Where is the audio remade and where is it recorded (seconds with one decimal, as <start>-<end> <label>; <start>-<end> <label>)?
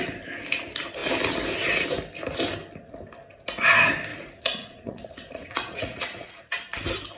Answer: 0.0-4.1 recorded; 4.1-6.5 remade; 6.5-7.2 recorded